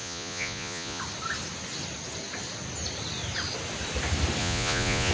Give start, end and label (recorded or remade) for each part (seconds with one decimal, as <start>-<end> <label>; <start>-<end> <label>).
0.0-1.0 remade; 1.0-4.4 recorded; 4.4-5.1 remade